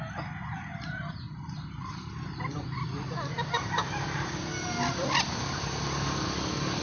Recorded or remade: recorded